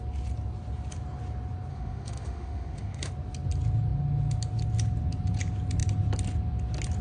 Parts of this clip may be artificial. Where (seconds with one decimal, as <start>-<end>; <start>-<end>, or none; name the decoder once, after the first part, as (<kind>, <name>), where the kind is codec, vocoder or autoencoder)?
1.7-3.1 (autoencoder, DAC-VAE)